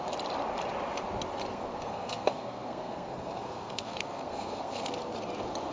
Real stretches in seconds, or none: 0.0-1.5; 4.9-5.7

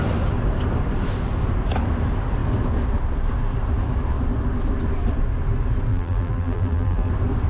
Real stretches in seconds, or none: 0.0-5.9; 7.1-7.5

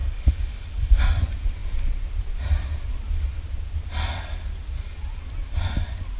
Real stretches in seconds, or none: 1.0-6.2

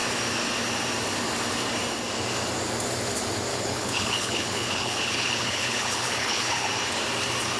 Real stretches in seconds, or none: 0.0-3.5; 6.7-7.6

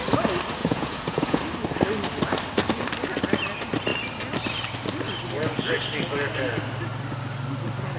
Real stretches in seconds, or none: 0.0-0.6; 1.4-8.0

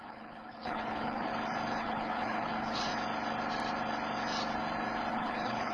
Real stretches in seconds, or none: 1.3-1.8; 2.9-5.1